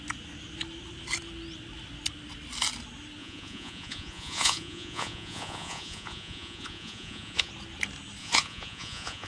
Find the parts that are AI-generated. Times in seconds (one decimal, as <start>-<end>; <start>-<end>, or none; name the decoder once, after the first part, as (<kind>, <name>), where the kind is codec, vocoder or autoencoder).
3.2-7.5 (vocoder, Vocos); 8.2-9.3